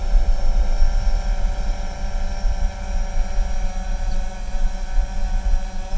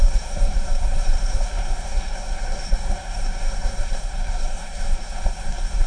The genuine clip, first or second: first